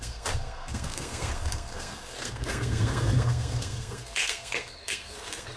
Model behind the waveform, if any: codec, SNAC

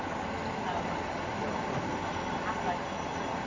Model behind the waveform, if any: none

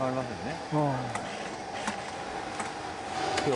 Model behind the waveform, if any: none